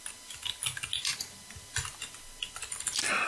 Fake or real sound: real